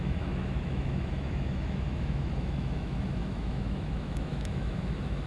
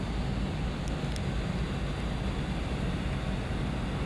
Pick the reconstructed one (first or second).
first